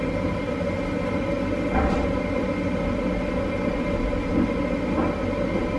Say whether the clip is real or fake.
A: real